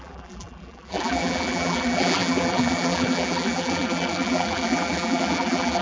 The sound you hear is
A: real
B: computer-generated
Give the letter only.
B